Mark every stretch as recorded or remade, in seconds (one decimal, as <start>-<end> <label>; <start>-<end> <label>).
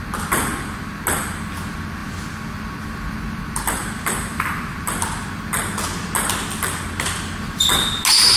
0.0-2.0 recorded; 2.0-5.3 remade; 5.3-8.4 recorded